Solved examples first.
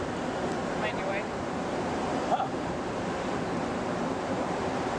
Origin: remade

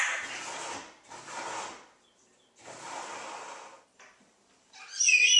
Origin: recorded